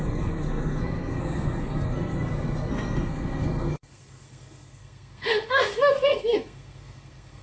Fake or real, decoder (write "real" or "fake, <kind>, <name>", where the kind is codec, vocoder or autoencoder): fake, codec, SNAC